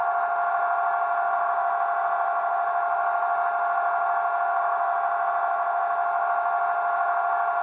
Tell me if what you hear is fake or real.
real